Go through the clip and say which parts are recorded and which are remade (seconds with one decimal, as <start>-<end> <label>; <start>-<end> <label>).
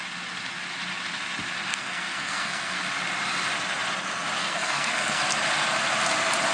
0.0-1.7 recorded; 1.7-2.8 remade; 2.8-4.4 recorded; 4.4-5.2 remade; 5.2-6.5 recorded